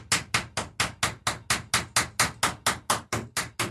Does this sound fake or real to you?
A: real